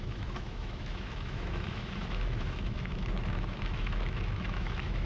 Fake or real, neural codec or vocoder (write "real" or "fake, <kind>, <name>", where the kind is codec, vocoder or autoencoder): fake, autoencoder, DAC-VAE